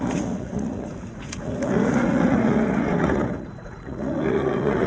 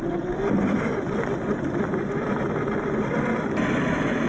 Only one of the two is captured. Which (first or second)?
second